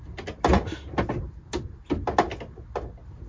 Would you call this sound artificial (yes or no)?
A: no